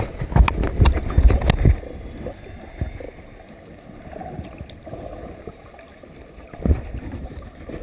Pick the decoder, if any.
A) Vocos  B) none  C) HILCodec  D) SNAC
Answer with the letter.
B